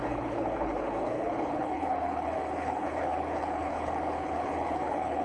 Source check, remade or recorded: remade